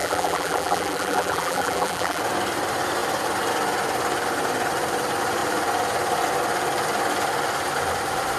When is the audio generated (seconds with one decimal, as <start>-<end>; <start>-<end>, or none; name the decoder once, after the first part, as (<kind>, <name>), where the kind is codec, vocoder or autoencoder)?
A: 0.0-2.2 (vocoder, BigVGAN v2)